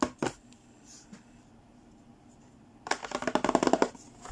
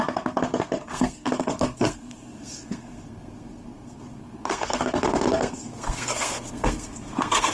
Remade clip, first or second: second